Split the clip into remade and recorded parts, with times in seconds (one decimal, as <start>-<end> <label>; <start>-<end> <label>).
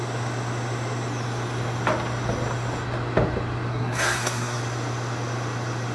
0.0-3.7 recorded; 3.7-4.6 remade; 4.6-5.9 recorded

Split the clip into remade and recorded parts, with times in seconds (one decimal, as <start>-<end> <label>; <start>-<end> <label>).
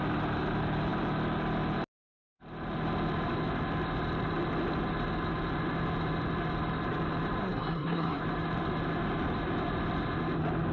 0.0-7.4 recorded; 7.4-8.2 remade; 8.2-10.7 recorded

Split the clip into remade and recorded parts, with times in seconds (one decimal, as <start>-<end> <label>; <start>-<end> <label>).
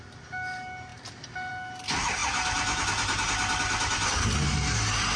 0.0-5.2 recorded